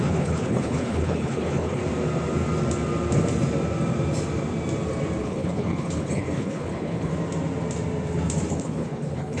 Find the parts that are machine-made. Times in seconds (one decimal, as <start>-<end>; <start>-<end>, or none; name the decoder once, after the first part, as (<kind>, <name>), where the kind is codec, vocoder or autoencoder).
0.0-1.8 (codec, HILCodec); 5.2-7.1; 8.5-9.4